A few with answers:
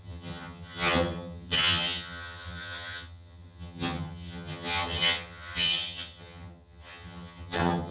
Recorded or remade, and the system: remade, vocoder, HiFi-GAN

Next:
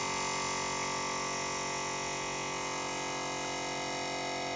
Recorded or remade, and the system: recorded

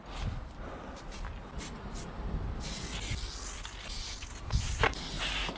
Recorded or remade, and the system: recorded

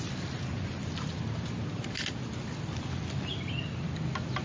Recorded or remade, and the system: recorded